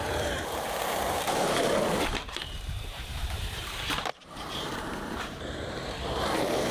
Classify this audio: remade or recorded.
remade